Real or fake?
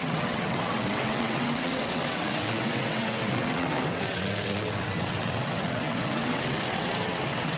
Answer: fake